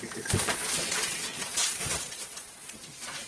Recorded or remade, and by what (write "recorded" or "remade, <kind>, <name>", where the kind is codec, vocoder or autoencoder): remade, vocoder, Vocos